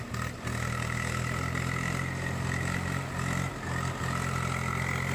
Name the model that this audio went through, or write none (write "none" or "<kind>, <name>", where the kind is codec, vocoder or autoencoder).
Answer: none